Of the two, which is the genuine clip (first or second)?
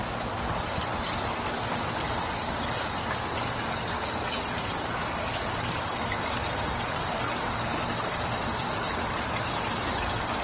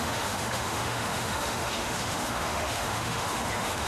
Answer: first